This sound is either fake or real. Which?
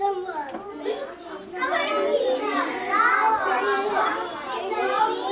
real